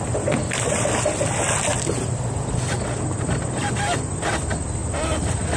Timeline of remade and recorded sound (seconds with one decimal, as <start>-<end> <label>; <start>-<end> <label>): 0.0-5.6 recorded